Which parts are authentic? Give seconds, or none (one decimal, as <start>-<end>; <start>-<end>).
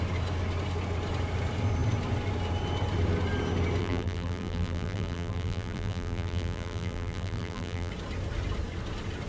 0.0-3.8; 7.9-9.3